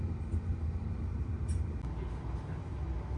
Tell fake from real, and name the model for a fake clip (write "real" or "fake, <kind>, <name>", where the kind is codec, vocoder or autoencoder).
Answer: real